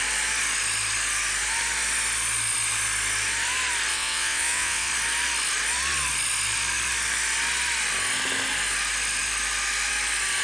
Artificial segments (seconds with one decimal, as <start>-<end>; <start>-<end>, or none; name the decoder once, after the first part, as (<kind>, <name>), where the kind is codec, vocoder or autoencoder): 3.9-4.9 (vocoder, WaveNeXt)